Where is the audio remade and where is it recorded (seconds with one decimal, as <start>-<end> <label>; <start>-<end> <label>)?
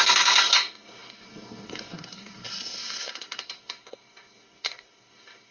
0.0-5.5 remade